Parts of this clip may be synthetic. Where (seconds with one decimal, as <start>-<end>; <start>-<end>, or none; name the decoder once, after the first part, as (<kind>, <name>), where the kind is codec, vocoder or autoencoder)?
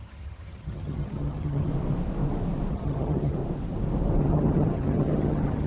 0.0-1.7 (vocoder, HiFi-GAN); 2.7-3.4; 4.2-5.7